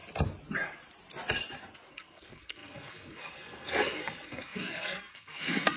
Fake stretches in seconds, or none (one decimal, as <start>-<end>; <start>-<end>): 1.9-5.8